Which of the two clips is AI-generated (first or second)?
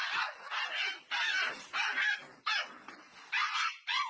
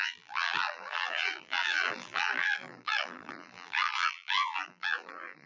second